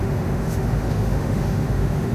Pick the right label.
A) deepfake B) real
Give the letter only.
A